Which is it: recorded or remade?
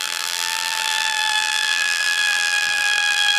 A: remade